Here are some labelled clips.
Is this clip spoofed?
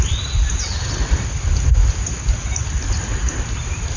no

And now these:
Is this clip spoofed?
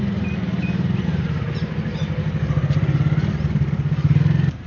no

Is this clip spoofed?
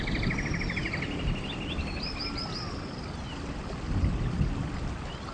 no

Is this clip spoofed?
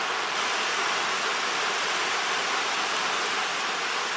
no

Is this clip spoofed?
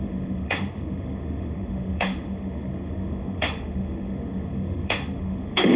yes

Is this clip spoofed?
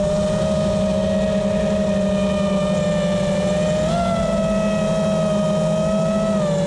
no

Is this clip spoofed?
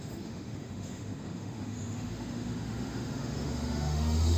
yes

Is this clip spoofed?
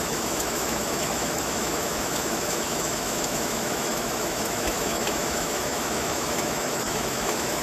yes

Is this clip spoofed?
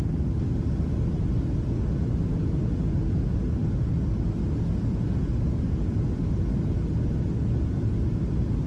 no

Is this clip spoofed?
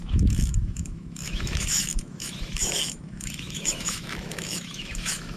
yes